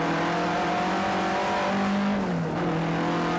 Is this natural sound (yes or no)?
yes